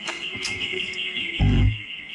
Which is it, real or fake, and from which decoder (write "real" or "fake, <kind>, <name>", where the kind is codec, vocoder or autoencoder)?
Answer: fake, codec, SNAC